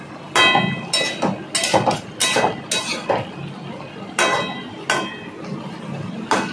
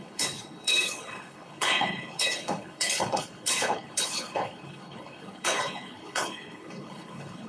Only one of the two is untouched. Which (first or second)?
first